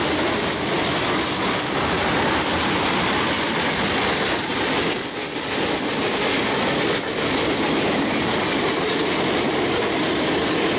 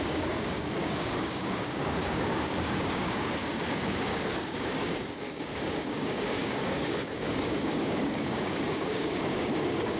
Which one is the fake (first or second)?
second